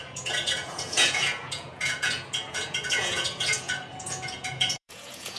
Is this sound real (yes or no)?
no